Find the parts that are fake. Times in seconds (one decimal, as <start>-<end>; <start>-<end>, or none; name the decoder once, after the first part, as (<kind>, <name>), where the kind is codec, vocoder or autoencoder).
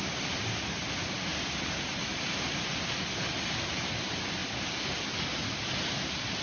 none